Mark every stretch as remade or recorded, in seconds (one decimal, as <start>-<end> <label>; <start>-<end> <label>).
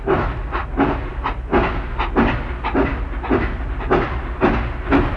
0.0-5.2 recorded